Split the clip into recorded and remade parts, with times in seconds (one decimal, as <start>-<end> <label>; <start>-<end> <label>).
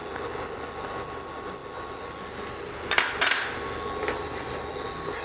0.0-5.2 recorded